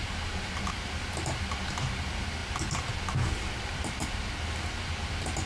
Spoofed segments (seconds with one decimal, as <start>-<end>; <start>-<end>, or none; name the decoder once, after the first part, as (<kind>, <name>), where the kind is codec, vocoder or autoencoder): 0.0-5.5 (vocoder, BigVGAN v2)